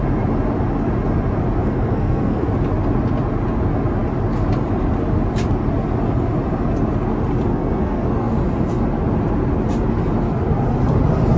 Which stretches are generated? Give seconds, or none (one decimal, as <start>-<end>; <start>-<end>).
1.6-2.5; 7.5-8.3